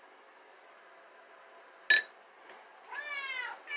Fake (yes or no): no